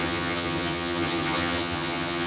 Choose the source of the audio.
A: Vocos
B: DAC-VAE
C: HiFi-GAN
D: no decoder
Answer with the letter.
C